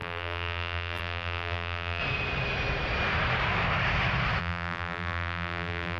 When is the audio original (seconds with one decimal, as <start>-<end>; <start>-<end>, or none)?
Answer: 2.0-4.4